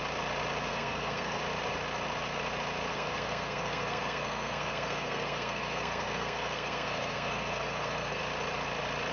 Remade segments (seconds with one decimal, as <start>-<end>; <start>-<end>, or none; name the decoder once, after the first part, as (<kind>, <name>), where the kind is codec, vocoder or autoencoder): 0.7-1.4 (codec, SNAC); 2.9-8.2

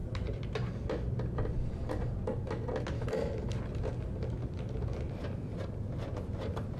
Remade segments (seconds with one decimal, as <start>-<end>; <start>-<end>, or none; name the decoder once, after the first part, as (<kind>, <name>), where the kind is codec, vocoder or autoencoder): none

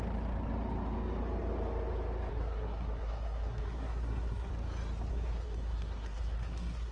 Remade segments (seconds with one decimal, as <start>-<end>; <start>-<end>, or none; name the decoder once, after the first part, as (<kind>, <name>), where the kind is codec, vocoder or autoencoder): 2.3-4.5 (codec, SNAC); 5.1-6.9

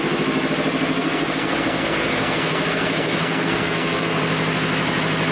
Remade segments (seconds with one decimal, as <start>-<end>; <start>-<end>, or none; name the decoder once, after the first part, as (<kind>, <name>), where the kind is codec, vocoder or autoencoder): 1.0-4.2 (codec, SNAC)

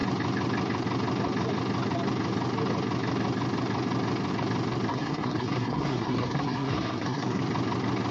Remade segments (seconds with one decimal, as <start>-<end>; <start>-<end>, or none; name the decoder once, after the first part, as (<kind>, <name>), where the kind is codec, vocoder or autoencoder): 4.9-7.4 (codec, SNAC)

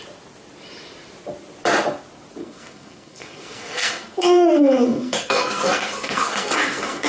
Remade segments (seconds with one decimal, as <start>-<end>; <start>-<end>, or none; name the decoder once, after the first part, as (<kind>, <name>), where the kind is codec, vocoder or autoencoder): 2.4-7.1 (codec, SNAC)

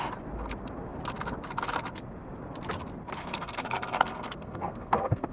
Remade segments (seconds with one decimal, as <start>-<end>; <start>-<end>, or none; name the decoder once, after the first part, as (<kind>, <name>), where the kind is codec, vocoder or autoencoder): 3.2-5.3 (codec, SNAC)